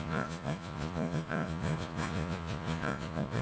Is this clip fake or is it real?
fake